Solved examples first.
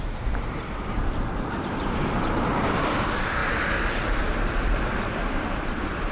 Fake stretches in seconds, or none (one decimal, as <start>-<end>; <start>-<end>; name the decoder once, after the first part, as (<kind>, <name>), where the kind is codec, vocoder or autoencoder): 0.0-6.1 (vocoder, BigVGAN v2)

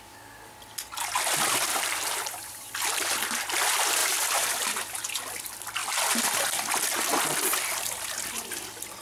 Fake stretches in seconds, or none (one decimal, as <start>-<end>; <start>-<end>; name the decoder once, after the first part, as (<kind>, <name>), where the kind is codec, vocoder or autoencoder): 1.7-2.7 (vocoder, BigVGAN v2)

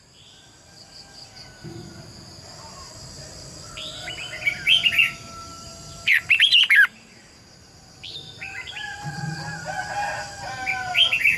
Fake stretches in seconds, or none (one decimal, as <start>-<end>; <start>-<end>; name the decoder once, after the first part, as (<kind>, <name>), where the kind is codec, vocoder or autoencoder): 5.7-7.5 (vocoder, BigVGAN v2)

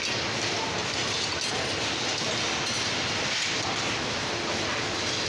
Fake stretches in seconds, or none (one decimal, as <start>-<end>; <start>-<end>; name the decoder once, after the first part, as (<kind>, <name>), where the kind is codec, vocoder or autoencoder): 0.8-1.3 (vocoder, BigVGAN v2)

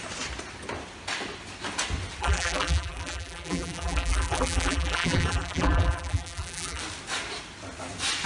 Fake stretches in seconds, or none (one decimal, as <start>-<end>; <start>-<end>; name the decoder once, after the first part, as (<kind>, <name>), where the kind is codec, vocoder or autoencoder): 2.2-6.8 (vocoder, BigVGAN v2)

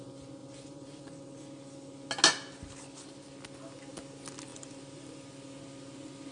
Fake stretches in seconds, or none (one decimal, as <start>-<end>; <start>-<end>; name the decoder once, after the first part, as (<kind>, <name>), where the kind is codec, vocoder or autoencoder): 0.4-1.0 (vocoder, BigVGAN v2); 4.5-5.3